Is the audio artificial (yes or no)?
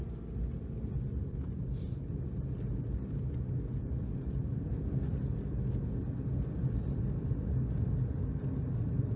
no